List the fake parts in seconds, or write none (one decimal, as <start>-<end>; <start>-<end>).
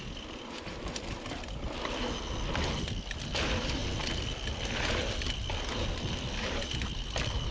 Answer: 3.1-3.8; 5.6-7.5